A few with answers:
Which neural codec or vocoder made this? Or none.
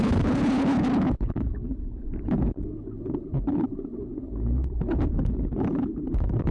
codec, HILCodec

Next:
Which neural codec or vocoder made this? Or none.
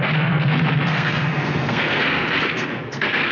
codec, SNAC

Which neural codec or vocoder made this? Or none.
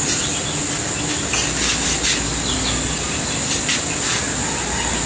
none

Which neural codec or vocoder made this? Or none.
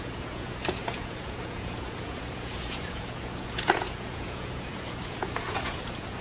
vocoder, Vocos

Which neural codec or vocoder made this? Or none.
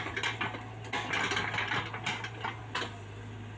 none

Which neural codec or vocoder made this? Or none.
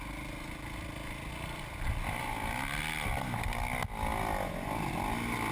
none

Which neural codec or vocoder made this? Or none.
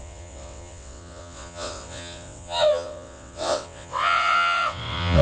vocoder, WaveNeXt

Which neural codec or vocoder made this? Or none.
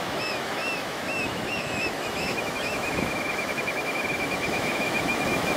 autoencoder, DAC-VAE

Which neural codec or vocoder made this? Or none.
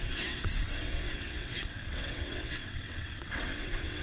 vocoder, WaveNeXt